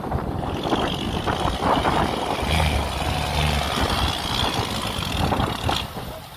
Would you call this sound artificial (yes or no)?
no